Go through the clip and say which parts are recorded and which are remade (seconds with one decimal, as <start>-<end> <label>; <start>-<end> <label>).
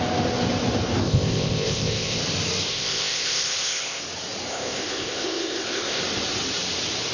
0.0-1.0 recorded; 1.0-2.2 remade; 2.2-2.7 recorded; 2.7-4.0 remade; 4.0-4.5 recorded; 4.5-6.0 remade; 6.0-7.1 recorded